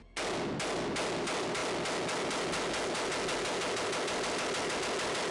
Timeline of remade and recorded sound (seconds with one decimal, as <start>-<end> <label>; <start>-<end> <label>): 0.0-5.3 recorded